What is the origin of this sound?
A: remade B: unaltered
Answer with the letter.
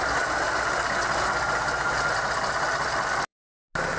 B